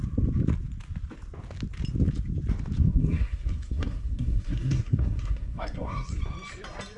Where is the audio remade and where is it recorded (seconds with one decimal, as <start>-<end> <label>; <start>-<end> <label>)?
0.0-2.8 recorded; 2.8-6.2 remade; 6.2-7.0 recorded